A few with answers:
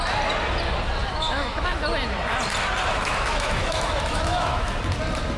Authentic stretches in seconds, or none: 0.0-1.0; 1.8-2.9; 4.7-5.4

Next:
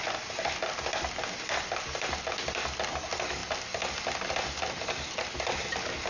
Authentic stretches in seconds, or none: 0.0-6.1